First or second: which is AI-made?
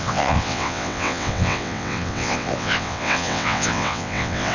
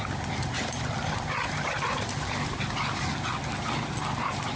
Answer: first